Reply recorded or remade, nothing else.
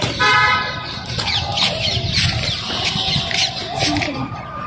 remade